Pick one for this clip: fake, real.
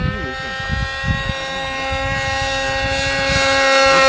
real